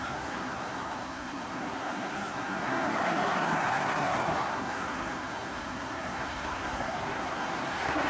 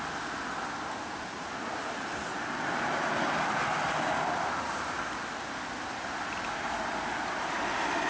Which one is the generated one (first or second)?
first